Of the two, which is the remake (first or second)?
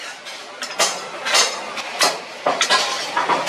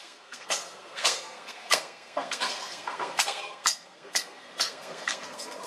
second